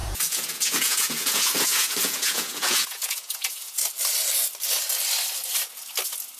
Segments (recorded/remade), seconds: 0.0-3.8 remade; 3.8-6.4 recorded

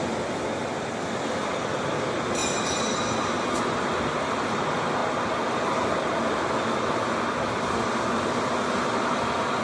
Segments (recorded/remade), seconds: 0.0-2.4 recorded; 2.4-3.3 remade; 3.3-9.6 recorded

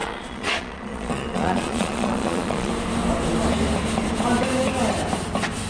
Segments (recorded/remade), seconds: 0.0-2.7 remade; 2.7-5.7 recorded

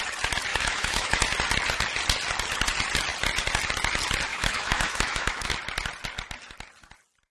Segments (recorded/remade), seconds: 0.0-0.5 recorded; 0.5-1.2 remade; 1.2-4.3 recorded; 4.3-5.5 remade; 5.5-7.3 recorded

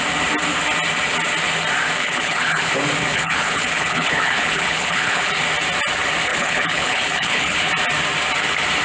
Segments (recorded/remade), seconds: 0.0-2.0 recorded; 2.0-2.7 remade; 2.7-3.1 recorded; 3.1-5.3 remade; 5.3-6.3 recorded; 6.3-7.7 remade; 7.7-8.8 recorded